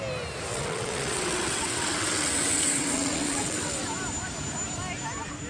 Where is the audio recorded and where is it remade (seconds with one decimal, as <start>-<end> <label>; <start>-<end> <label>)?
0.0-0.5 recorded; 0.5-3.8 remade; 3.8-5.5 recorded